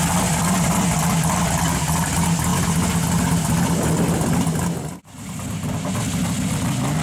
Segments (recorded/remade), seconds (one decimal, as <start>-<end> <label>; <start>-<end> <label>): 0.0-7.0 recorded

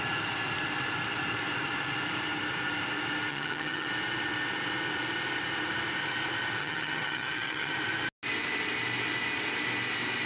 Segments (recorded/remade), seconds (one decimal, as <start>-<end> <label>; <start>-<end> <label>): 0.0-3.3 recorded; 3.3-3.9 remade; 3.9-6.6 recorded; 6.6-7.7 remade; 7.7-10.3 recorded

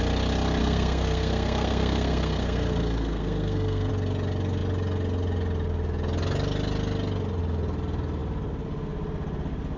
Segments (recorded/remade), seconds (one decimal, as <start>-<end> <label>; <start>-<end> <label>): 0.0-0.6 recorded; 0.6-3.9 remade; 3.9-9.8 recorded

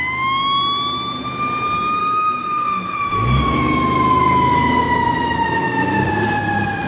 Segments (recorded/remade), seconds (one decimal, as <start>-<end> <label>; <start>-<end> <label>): 0.0-2.0 recorded; 2.0-6.1 remade; 6.1-6.9 recorded

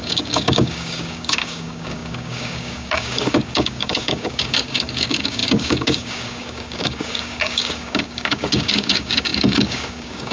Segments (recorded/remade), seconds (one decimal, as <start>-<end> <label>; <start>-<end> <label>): 0.0-10.3 remade